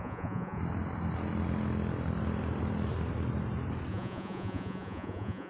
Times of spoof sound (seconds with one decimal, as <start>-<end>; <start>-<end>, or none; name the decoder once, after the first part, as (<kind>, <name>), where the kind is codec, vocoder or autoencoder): 0.0-0.6 (vocoder, Vocos); 3.9-5.5